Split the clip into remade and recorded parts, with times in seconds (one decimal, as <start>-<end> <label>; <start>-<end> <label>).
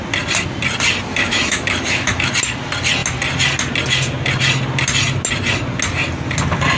0.0-1.1 recorded; 1.1-2.3 remade; 2.3-6.8 recorded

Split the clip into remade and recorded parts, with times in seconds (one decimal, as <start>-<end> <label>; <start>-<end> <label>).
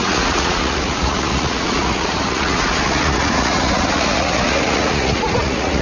0.0-5.8 remade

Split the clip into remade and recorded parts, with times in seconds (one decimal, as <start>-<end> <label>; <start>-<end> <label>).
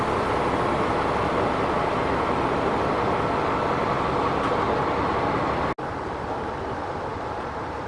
0.0-7.9 recorded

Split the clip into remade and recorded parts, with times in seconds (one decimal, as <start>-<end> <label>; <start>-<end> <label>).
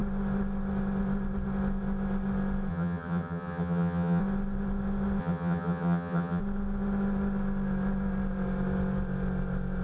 0.0-2.7 recorded; 2.7-4.2 remade; 4.2-5.2 recorded; 5.2-6.4 remade; 6.4-9.8 recorded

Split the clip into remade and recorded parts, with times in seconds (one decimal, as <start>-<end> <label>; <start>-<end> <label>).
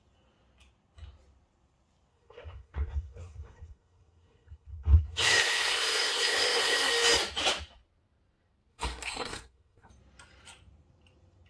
0.0-2.1 recorded; 2.1-6.9 remade; 6.9-8.7 recorded; 8.7-9.9 remade; 9.9-11.5 recorded